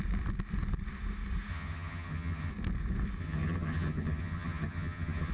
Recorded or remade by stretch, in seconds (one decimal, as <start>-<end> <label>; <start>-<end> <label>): 0.0-1.5 recorded; 1.5-2.5 remade; 2.5-3.2 recorded; 3.2-5.3 remade